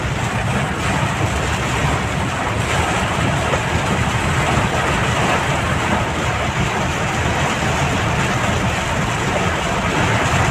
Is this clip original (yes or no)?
yes